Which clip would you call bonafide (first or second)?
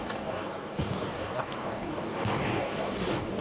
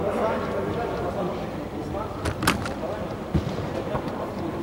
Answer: second